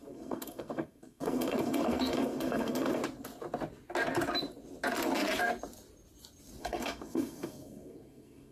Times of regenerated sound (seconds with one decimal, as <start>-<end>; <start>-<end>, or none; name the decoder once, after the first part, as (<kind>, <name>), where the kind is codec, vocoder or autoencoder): 0.0-3.0 (codec, SNAC); 6.6-8.5